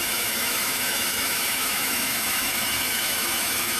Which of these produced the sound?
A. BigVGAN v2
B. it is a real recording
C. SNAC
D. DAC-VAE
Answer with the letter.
D